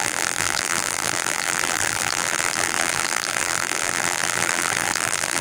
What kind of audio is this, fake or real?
fake